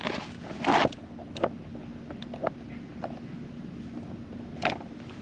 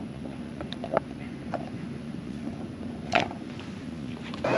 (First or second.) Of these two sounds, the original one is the first